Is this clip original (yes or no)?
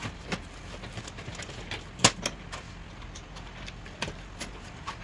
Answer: yes